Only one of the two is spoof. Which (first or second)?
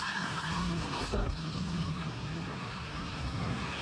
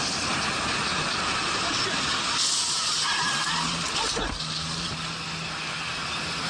first